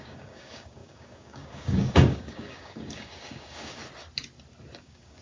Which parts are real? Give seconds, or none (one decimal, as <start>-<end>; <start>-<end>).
3.8-4.8